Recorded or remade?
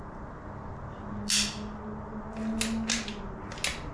recorded